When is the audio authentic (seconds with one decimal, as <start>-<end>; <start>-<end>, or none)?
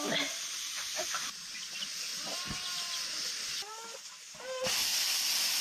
2.1-4.4